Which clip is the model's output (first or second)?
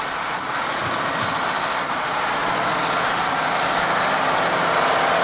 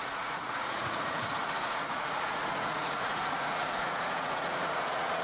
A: second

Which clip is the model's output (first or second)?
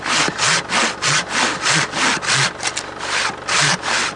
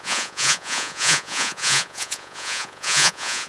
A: second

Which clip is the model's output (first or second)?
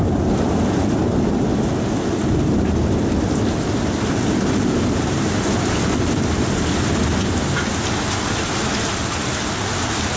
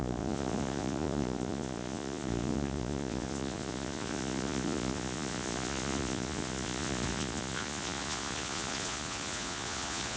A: second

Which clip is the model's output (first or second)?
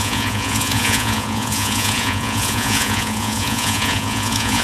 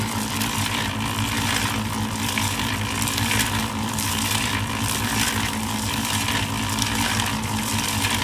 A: first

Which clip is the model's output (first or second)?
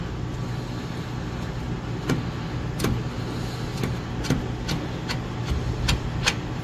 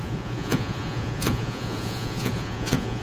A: second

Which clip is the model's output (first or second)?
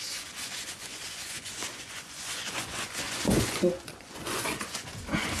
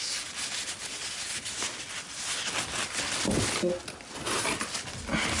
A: first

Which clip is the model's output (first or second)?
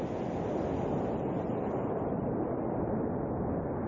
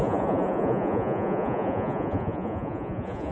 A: second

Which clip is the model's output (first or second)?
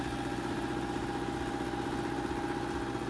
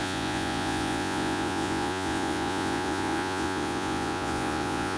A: second